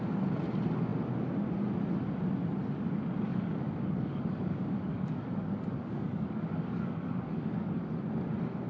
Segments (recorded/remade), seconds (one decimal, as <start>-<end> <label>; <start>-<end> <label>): 0.0-3.3 recorded; 3.3-7.9 remade; 7.9-8.7 recorded